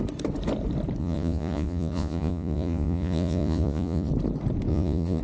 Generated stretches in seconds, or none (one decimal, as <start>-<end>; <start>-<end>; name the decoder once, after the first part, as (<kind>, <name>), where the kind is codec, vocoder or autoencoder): 1.0-4.1 (vocoder, Vocos); 4.7-5.2

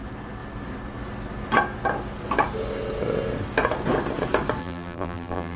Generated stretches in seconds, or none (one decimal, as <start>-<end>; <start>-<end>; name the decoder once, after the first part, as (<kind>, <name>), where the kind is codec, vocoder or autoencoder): 4.6-5.6 (vocoder, BigVGAN v2)

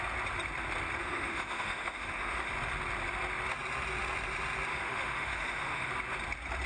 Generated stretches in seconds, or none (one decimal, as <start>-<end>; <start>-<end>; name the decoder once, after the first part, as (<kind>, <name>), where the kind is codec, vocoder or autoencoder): 1.0-2.5 (autoencoder, DAC-VAE); 4.7-5.9

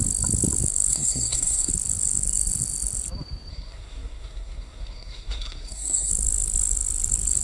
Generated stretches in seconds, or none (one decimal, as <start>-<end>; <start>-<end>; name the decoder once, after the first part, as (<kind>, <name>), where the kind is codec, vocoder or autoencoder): 0.9-1.7 (codec, SNAC); 3.5-6.1

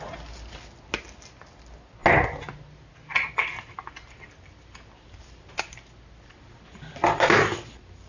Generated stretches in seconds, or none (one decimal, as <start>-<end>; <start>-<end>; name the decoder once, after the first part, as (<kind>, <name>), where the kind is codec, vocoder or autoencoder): none